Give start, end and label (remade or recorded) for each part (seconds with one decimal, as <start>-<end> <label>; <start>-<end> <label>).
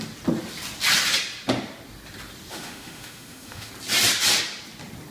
0.0-2.5 recorded; 2.5-3.7 remade; 3.7-5.1 recorded